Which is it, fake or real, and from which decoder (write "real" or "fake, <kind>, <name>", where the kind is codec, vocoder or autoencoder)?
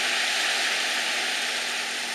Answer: real